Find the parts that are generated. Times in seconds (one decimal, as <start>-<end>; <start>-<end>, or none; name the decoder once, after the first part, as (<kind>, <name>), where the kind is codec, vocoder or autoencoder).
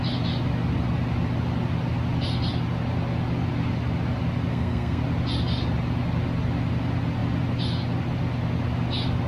4.5-5.0 (codec, SNAC)